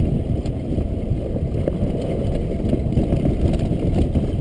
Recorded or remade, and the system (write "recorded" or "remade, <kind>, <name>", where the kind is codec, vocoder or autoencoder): remade, vocoder, BigVGAN v2